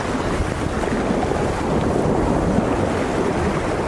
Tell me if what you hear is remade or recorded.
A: recorded